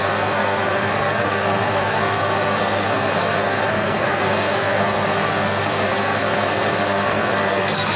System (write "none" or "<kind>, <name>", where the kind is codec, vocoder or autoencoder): codec, SNAC